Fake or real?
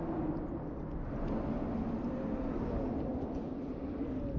real